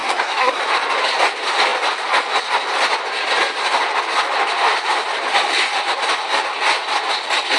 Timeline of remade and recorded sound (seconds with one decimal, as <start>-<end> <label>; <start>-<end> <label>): 0.0-0.6 remade; 0.6-7.6 recorded